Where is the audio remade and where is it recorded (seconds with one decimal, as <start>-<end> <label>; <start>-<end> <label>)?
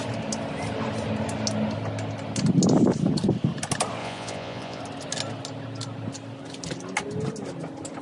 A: 0.0-4.0 recorded; 4.0-4.8 remade; 4.8-8.0 recorded